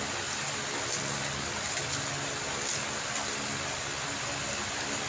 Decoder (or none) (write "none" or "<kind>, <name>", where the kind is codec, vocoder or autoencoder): none